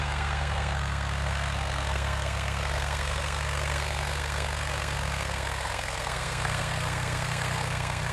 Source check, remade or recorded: remade